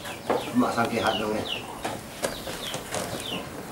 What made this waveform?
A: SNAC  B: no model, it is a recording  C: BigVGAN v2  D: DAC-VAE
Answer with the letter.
C